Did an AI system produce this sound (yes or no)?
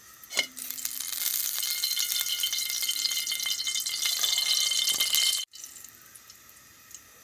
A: no